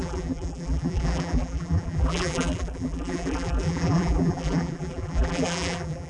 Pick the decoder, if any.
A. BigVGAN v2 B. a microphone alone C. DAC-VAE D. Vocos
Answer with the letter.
A